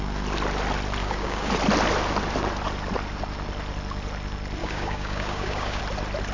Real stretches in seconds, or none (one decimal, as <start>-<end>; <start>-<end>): 0.0-1.0; 1.5-4.6; 5.8-6.3